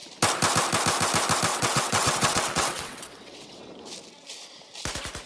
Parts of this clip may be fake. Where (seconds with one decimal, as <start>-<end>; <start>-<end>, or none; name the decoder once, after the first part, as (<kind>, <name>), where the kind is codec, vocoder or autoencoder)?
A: 1.5-3.6 (vocoder, WaveNeXt)